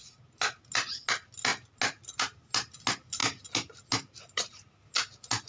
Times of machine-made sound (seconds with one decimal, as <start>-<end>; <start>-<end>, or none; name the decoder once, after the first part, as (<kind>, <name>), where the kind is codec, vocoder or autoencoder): none